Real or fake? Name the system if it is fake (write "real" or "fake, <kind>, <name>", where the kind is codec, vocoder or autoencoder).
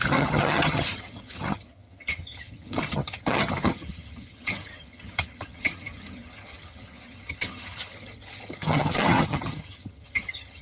fake, vocoder, HiFi-GAN